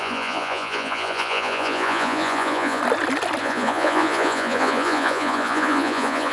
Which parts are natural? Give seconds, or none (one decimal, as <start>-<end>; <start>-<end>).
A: 2.8-3.4